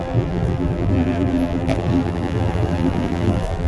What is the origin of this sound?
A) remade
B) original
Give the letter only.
A